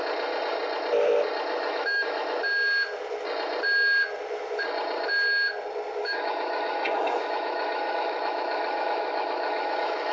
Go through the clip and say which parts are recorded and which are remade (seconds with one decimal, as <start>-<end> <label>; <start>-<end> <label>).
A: 0.0-1.5 recorded; 1.5-2.4 remade; 2.4-6.0 recorded; 6.0-10.1 remade